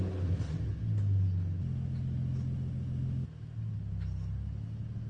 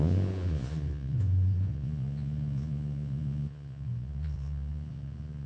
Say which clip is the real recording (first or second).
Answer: first